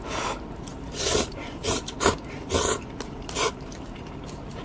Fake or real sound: fake